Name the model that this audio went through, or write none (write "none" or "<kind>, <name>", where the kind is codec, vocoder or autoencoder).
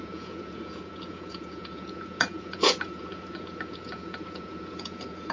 vocoder, Vocos